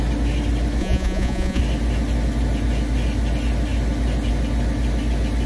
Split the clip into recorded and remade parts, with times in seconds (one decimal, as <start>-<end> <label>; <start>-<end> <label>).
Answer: 0.0-0.8 recorded; 0.8-1.6 remade; 1.6-5.5 recorded